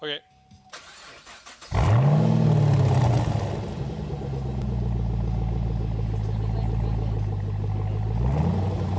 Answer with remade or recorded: recorded